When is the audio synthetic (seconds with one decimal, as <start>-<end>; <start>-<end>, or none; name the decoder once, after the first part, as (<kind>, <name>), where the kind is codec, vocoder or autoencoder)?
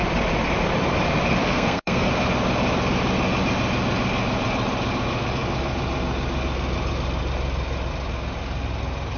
1.4-2.1 (codec, SNAC)